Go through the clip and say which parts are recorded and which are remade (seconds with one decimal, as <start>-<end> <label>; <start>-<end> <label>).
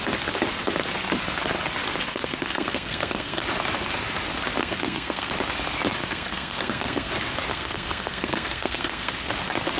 0.0-2.1 recorded; 2.1-3.4 remade; 3.4-4.6 recorded; 4.6-5.3 remade; 5.3-6.0 recorded; 6.0-7.1 remade; 7.1-7.5 recorded; 7.5-9.3 remade; 9.3-9.8 recorded